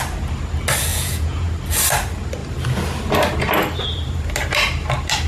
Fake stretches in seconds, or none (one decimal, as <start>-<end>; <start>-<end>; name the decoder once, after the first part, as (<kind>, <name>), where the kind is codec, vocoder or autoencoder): 0.9-1.5 (vocoder, Vocos)